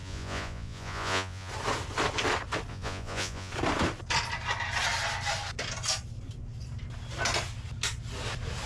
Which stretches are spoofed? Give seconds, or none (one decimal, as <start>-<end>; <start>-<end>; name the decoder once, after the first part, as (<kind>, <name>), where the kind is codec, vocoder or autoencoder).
0.0-1.5 (vocoder, Vocos); 2.7-3.5